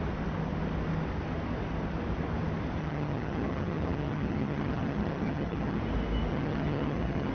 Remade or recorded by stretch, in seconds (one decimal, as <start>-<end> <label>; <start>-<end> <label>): 0.0-2.8 recorded; 2.8-5.8 remade; 5.8-6.3 recorded; 6.3-7.3 remade